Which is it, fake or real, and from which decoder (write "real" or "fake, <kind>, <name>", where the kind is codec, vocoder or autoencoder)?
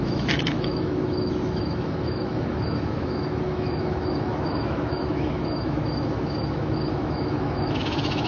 fake, autoencoder, DAC-VAE